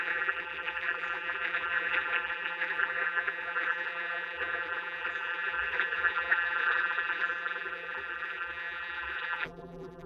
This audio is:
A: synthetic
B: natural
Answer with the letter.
A